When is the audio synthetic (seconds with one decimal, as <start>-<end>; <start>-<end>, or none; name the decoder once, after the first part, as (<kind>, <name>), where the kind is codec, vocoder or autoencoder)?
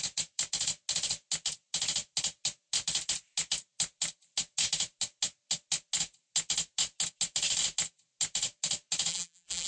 9.1-9.7 (vocoder, BigVGAN v2)